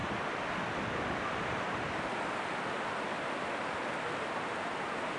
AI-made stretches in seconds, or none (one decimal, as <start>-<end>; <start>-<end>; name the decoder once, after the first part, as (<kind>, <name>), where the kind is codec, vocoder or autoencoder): none